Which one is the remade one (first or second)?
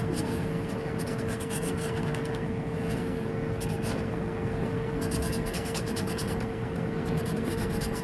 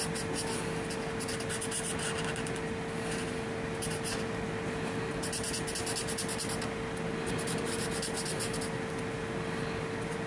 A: first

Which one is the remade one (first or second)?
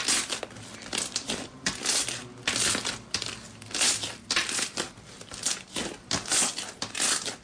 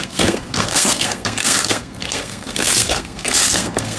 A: second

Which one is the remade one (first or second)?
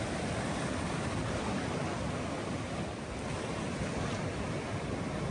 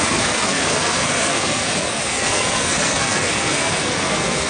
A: second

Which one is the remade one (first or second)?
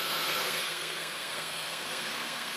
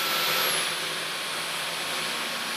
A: first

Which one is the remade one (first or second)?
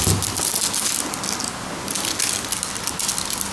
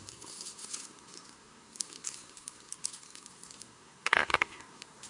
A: second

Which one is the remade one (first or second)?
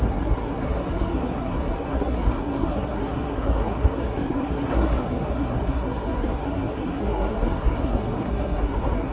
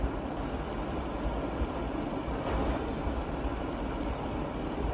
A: first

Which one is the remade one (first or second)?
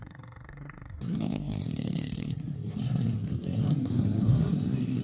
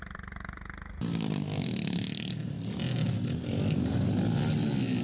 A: first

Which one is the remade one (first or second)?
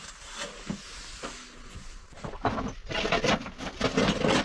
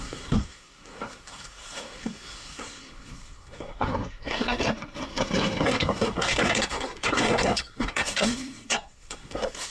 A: second